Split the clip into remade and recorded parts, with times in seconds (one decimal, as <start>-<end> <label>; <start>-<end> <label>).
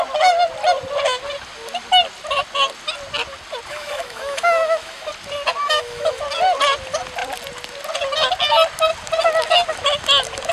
0.0-3.7 recorded; 3.7-5.1 remade; 5.1-5.6 recorded; 5.6-6.2 remade; 6.2-10.5 recorded